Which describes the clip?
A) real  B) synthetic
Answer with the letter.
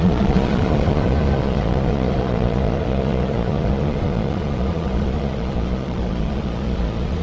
B